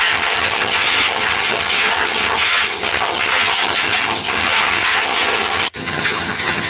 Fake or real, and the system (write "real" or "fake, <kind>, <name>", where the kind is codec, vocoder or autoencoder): fake, vocoder, HiFi-GAN